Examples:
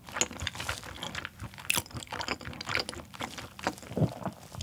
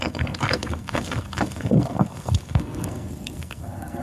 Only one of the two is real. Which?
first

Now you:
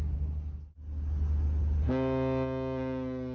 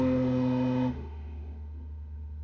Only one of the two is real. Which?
first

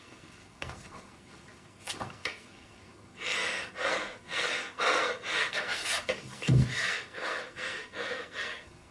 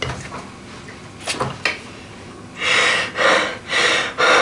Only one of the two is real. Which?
second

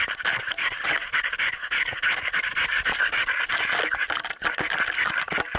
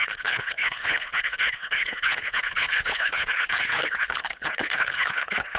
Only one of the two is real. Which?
first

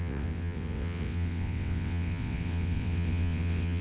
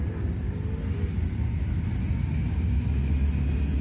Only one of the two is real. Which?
second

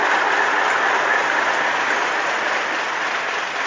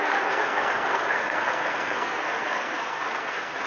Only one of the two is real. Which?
first